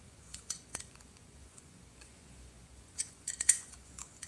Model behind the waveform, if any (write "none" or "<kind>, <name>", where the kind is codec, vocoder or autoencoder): vocoder, Vocos